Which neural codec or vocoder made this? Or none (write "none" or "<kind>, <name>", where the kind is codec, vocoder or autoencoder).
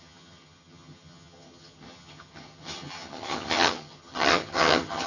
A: vocoder, HiFi-GAN